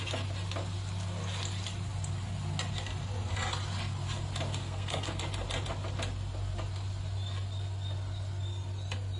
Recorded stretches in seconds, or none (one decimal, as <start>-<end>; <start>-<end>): 0.0-4.6; 5.2-9.2